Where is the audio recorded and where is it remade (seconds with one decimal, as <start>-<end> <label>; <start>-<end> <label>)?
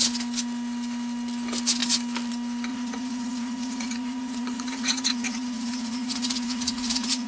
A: 0.0-2.7 recorded; 2.7-7.3 remade